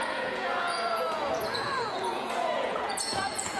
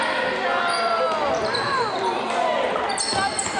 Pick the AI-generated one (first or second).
first